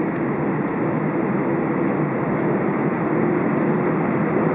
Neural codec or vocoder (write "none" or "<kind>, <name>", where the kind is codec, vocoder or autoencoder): none